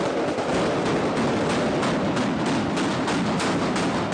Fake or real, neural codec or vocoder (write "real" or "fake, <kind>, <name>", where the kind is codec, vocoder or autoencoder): real